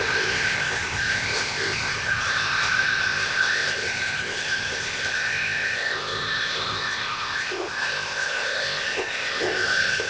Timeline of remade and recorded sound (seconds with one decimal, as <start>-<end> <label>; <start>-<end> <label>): 0.0-10.1 remade